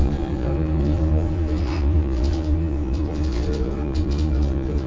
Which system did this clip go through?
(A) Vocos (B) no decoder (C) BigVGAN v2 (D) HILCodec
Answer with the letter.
A